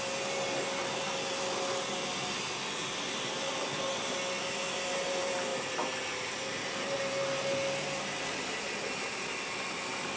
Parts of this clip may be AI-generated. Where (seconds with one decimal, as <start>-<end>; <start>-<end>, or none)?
none